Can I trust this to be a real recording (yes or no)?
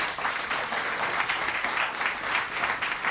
yes